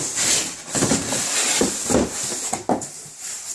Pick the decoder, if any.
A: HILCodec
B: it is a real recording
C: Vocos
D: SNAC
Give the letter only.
B